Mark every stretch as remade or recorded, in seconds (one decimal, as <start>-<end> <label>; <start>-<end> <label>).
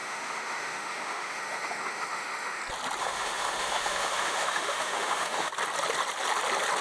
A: 0.0-2.6 remade; 2.6-3.0 recorded; 3.0-5.5 remade; 5.5-6.8 recorded